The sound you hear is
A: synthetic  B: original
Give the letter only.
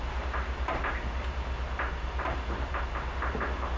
B